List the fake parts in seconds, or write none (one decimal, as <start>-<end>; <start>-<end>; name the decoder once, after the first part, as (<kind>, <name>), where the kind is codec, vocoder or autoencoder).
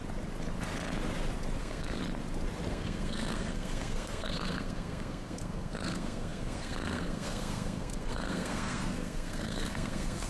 1.6-2.0 (codec, SNAC); 2.7-10.3